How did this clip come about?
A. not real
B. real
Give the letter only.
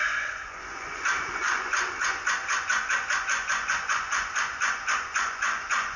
A